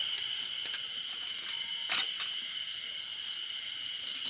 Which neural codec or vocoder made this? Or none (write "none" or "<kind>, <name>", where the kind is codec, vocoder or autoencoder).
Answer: none